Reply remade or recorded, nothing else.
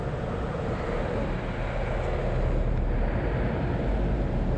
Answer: recorded